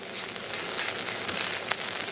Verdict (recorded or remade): recorded